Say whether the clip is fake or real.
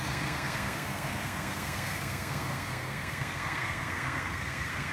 fake